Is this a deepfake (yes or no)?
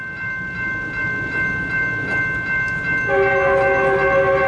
no